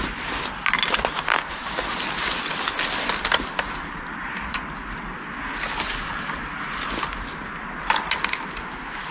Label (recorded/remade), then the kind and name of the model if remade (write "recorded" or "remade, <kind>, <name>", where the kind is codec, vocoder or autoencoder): recorded